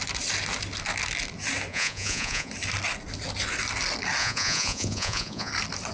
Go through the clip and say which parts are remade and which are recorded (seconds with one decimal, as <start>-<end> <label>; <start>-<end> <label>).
0.0-1.7 recorded; 1.7-2.5 remade; 2.5-4.2 recorded; 4.2-5.5 remade; 5.5-5.9 recorded